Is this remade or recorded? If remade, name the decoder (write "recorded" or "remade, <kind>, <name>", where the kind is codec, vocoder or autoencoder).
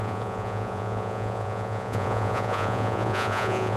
remade, vocoder, Vocos